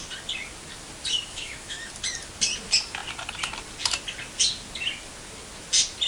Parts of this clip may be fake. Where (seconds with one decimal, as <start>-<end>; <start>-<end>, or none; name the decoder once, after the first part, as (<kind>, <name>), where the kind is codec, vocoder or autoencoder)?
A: 1.1-1.9 (autoencoder, DAC-VAE)